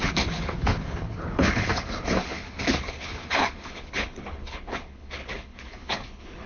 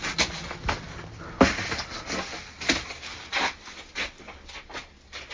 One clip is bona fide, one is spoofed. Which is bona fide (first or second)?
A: second